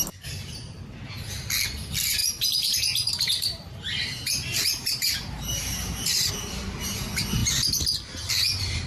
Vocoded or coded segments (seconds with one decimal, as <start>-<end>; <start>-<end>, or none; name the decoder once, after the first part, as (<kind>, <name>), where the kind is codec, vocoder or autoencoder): 2.2-6.3 (vocoder, BigVGAN v2)